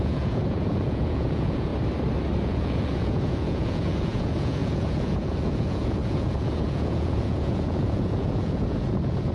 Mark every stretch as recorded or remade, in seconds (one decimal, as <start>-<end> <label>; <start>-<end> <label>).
0.0-1.7 remade; 1.7-2.4 recorded; 2.4-9.3 remade